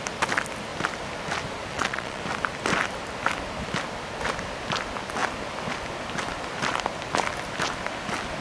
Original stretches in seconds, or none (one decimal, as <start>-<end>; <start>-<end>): 0.0-1.7; 2.2-8.4